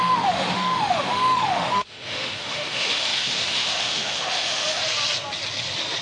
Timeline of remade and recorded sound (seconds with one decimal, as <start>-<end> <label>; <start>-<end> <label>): 0.0-4.8 remade; 4.8-6.0 recorded